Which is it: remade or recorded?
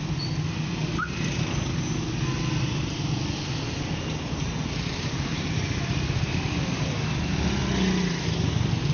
recorded